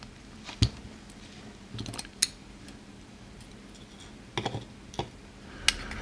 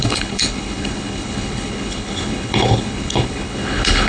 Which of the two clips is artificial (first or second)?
second